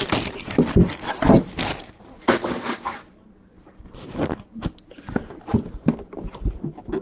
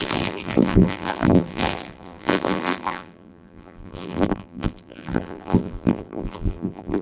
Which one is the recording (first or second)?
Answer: first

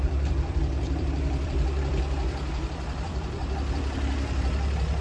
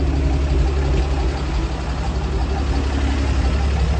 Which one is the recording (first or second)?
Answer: second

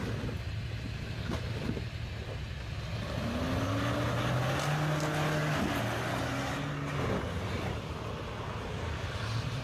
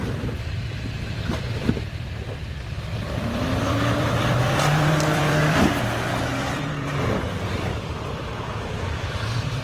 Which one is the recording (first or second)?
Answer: first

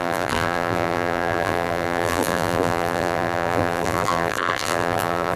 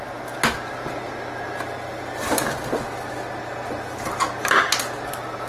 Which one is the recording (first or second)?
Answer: second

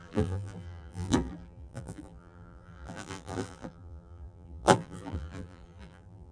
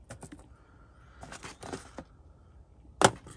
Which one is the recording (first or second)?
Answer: second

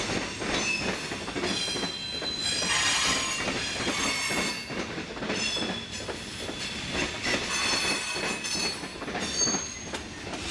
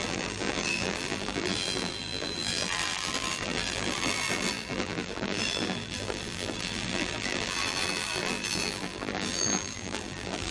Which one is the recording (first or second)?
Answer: first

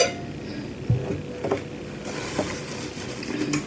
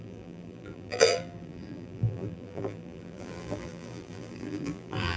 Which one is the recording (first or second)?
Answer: first